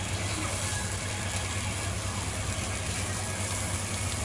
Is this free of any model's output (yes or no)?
yes